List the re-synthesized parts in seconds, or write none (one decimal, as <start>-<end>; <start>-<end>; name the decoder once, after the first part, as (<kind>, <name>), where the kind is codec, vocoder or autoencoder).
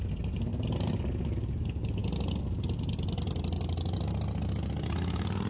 none